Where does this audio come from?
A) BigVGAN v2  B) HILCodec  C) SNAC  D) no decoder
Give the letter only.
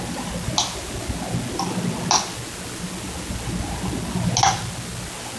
D